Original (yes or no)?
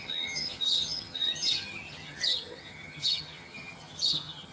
no